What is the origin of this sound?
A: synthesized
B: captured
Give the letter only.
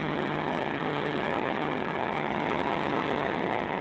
A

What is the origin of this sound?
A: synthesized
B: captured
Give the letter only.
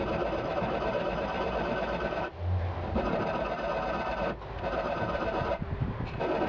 B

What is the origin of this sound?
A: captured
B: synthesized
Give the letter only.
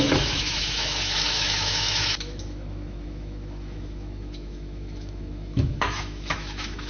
B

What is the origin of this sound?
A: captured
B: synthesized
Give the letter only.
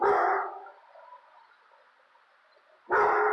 A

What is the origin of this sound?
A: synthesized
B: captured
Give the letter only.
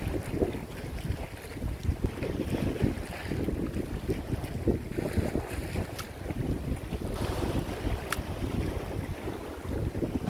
B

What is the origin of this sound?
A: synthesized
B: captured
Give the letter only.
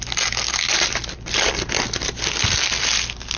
B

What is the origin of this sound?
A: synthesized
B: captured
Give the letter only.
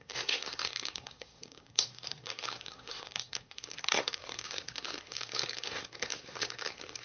A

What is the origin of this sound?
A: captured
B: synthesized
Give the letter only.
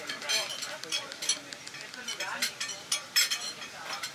A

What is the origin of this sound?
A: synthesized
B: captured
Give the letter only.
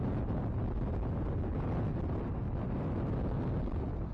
B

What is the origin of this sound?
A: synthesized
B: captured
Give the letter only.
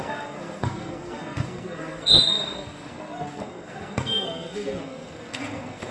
A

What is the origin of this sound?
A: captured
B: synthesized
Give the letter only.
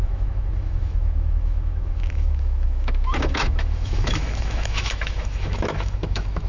B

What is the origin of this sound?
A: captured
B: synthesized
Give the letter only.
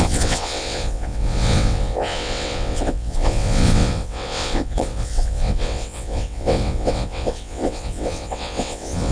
B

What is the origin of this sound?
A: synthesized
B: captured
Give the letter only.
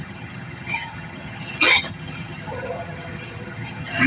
A